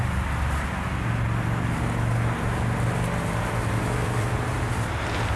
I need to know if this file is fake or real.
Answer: real